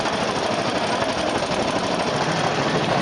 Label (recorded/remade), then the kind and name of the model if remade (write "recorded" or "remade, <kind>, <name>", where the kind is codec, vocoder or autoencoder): recorded